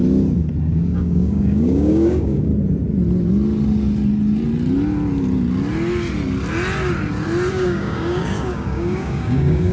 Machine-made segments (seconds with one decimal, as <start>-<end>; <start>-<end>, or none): 0.7-2.5; 7.5-9.7